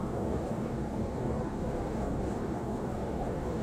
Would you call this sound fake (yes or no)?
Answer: yes